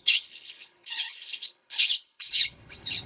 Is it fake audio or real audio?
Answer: fake